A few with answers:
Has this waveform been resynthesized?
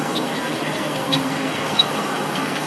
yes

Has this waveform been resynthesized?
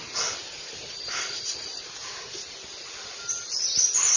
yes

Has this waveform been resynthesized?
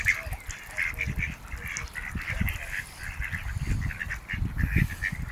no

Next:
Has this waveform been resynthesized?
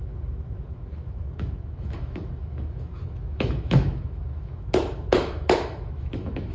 yes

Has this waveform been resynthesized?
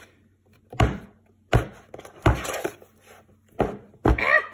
no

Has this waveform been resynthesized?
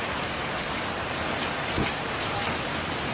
no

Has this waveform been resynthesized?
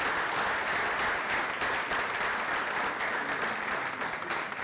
no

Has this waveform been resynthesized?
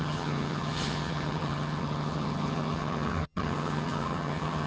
yes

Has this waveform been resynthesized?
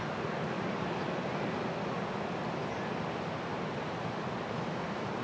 no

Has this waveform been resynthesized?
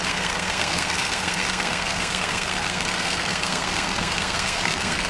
yes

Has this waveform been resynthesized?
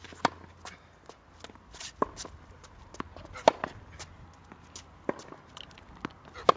no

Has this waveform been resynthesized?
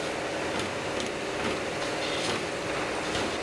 no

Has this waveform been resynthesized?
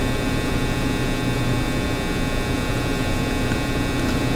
no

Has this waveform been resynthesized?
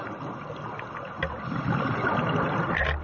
no